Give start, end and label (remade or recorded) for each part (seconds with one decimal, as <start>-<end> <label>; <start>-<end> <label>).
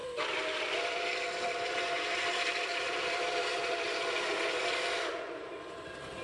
0.0-6.2 remade